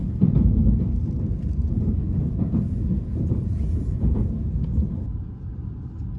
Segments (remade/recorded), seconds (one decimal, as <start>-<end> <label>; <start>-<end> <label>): 0.0-0.6 remade; 0.6-2.0 recorded; 2.0-5.5 remade; 5.5-6.2 recorded